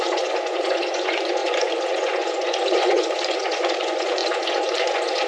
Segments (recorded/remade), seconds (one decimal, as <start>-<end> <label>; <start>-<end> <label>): 0.0-5.3 remade